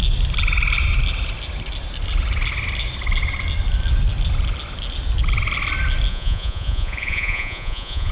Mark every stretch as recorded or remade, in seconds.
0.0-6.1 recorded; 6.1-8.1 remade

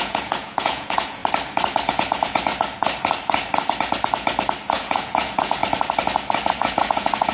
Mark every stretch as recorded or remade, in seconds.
0.0-1.2 remade; 1.2-1.9 recorded; 1.9-2.5 remade; 2.5-4.7 recorded; 4.7-5.6 remade; 5.6-6.5 recorded; 6.5-7.3 remade

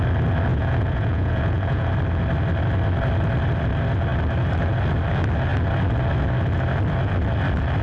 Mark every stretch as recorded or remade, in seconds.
0.0-0.5 recorded; 0.5-1.9 remade; 1.9-7.8 recorded

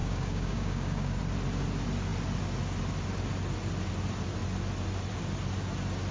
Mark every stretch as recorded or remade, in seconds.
0.0-1.2 remade; 1.2-6.1 recorded